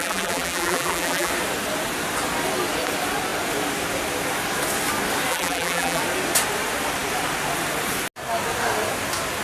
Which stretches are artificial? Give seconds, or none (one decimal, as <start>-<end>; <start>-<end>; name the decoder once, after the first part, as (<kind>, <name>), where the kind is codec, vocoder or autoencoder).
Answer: 0.0-1.3 (vocoder, BigVGAN v2); 5.3-6.0

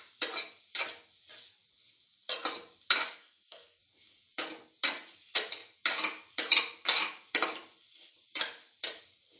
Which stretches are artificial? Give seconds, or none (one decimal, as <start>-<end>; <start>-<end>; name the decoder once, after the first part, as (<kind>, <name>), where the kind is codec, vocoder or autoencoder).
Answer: 3.1-3.8 (codec, SNAC)

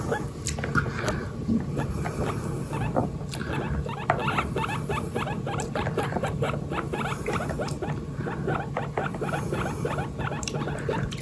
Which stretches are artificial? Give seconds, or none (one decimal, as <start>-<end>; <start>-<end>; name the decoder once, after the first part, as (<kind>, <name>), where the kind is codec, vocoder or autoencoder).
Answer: none

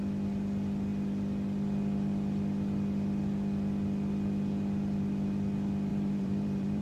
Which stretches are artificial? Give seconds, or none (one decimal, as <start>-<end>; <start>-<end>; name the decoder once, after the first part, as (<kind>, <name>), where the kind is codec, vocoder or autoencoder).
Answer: 5.9-6.8 (vocoder, BigVGAN v2)

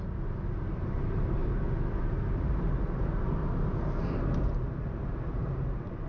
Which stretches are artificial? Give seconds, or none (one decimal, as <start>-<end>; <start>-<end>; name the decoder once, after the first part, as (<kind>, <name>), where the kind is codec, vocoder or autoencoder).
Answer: 0.7-1.4 (vocoder, BigVGAN v2); 2.0-3.4; 4.9-6.1